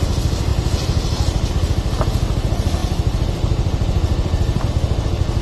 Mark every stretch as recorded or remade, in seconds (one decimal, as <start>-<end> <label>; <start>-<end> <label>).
0.0-0.5 recorded; 0.5-1.5 remade; 1.5-2.8 recorded; 2.8-4.7 remade; 4.7-5.4 recorded